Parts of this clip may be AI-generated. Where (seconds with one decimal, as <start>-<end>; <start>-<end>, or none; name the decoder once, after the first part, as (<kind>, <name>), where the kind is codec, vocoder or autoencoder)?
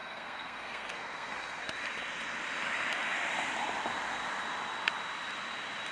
0.0-1.6 (codec, SNAC)